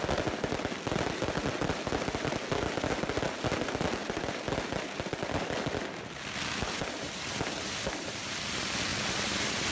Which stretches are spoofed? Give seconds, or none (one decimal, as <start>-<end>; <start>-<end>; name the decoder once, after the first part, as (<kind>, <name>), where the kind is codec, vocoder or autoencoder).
4.0-8.2 (vocoder, BigVGAN v2); 8.9-9.7